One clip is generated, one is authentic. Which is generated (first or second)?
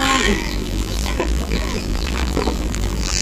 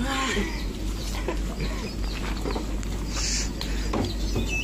first